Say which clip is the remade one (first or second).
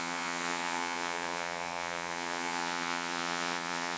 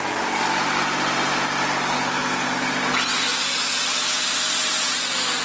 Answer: first